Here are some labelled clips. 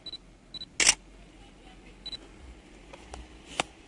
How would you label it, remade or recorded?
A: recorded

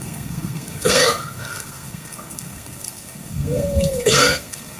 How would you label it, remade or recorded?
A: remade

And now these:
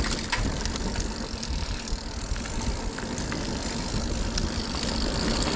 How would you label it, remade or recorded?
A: recorded